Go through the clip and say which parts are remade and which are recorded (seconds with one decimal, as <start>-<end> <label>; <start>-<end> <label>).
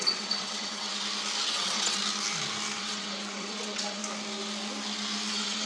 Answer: 0.0-0.9 remade; 0.9-1.5 recorded; 1.5-2.0 remade; 2.0-2.8 recorded; 2.8-4.0 remade; 4.0-5.3 recorded; 5.3-5.7 remade